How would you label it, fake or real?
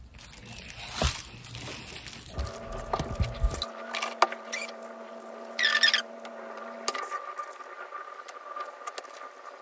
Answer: real